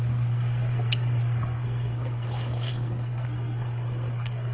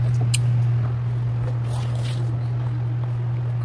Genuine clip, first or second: second